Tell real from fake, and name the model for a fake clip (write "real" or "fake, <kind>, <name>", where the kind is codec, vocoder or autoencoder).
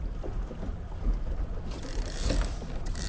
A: real